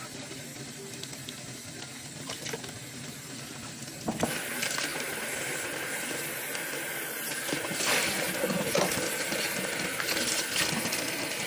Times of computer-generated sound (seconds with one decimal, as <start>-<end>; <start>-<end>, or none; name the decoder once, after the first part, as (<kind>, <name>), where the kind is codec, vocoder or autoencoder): 4.9-6.0 (vocoder, BigVGAN v2)